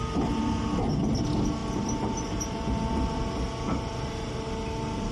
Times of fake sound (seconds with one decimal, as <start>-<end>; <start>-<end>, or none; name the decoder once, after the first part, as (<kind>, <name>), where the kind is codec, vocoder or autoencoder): none

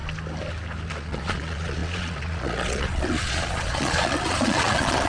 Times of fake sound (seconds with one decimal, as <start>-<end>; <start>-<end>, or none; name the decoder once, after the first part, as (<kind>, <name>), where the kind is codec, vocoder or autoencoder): 0.9-5.1 (vocoder, Vocos)

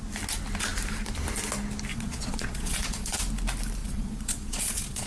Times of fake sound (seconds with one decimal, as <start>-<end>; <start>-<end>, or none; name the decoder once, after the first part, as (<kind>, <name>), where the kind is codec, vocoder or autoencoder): 1.9-3.2 (vocoder, Vocos); 3.8-5.1

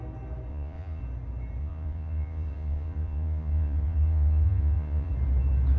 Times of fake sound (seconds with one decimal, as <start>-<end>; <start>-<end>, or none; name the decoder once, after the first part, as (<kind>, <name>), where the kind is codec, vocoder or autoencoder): 0.5-1.0 (vocoder, Vocos); 1.6-5.1